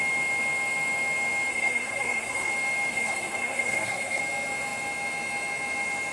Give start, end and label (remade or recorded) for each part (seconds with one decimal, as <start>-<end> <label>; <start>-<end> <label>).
0.0-1.5 recorded; 1.5-2.5 remade; 2.5-2.9 recorded; 2.9-4.2 remade; 4.2-6.1 recorded